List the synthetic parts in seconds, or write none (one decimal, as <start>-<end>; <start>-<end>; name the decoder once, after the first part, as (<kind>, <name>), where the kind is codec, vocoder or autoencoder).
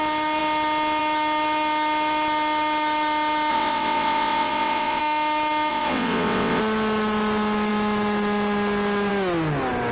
3.5-5.0 (vocoder, WaveNeXt); 5.7-6.6